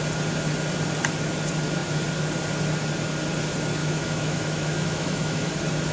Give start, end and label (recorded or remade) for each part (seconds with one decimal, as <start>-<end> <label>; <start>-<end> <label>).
0.0-3.8 recorded; 3.8-5.5 remade; 5.5-5.9 recorded